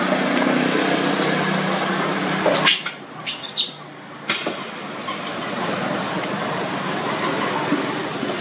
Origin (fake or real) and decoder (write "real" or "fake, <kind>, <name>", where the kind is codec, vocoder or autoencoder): real